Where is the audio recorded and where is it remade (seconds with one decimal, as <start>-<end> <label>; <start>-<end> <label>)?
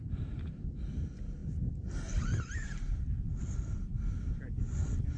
0.0-5.2 recorded